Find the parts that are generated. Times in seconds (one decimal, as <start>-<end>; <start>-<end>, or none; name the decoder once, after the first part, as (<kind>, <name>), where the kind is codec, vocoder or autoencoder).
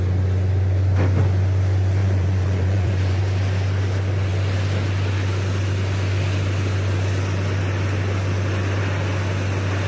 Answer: 2.0-3.2 (vocoder, Vocos)